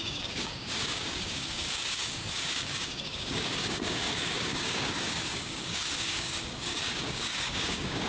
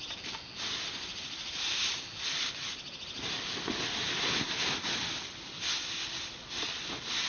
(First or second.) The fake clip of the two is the first